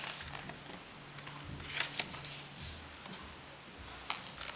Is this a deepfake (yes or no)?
no